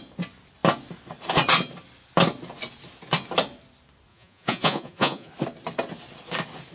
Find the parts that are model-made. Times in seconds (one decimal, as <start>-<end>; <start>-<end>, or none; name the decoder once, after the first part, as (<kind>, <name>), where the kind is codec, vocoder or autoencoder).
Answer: 4.1-5.3 (vocoder, Vocos)